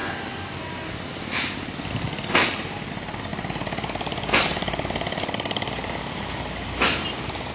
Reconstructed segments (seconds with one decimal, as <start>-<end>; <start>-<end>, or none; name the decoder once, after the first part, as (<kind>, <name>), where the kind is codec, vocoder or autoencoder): 2.4-2.9 (vocoder, BigVGAN v2); 3.3-7.5